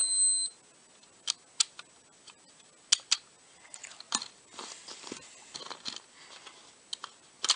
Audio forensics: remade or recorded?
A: recorded